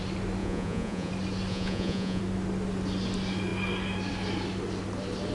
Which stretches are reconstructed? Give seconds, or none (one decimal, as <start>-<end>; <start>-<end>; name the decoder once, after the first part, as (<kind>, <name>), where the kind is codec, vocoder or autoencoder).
0.4-1.1 (vocoder, Vocos); 1.5-2.2